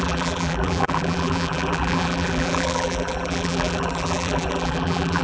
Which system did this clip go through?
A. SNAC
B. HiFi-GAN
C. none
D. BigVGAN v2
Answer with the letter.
D